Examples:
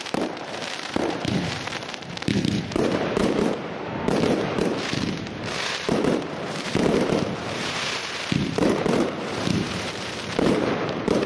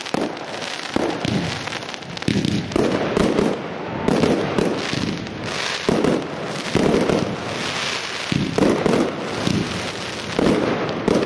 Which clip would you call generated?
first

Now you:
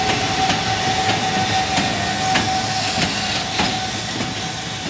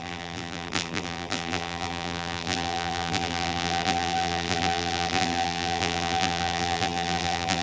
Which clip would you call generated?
second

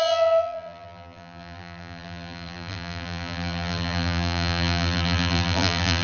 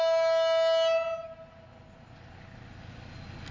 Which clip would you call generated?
first